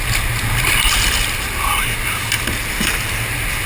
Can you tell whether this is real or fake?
real